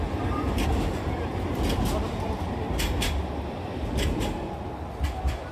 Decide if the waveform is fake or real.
real